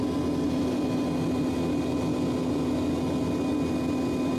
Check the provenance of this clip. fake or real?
real